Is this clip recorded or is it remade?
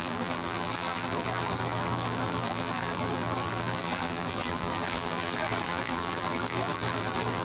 remade